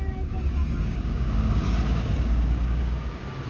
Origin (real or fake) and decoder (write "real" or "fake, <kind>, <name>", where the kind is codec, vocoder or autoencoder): fake, codec, DAC